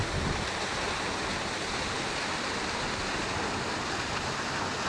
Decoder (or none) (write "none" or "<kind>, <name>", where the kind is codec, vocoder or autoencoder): none